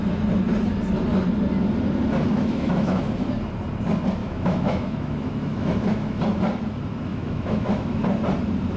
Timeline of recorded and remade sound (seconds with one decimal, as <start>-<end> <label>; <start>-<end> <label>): 0.0-2.3 recorded; 2.3-3.0 remade; 3.0-4.2 recorded; 4.2-6.2 remade; 6.2-7.1 recorded; 7.1-8.0 remade; 8.0-8.8 recorded